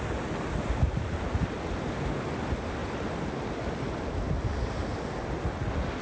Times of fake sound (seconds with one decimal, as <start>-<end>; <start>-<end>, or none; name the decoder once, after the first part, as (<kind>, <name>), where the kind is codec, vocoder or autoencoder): none